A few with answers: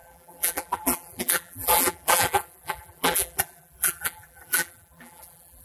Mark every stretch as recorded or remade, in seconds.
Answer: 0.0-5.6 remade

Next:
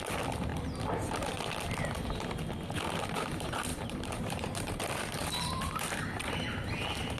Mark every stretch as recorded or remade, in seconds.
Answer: 0.0-3.7 recorded; 3.7-4.8 remade; 4.8-5.2 recorded; 5.2-6.2 remade; 6.2-7.2 recorded

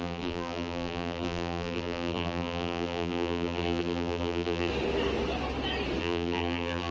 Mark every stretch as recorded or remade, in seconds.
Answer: 0.0-4.7 remade; 4.7-6.0 recorded; 6.0-6.9 remade

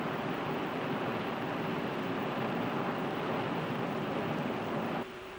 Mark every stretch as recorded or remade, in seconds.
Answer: 0.0-5.4 recorded